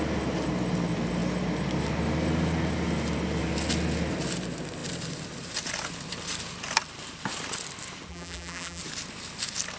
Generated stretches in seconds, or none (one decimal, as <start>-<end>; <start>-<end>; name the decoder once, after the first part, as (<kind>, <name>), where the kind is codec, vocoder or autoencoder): 8.1-8.8 (vocoder, BigVGAN v2)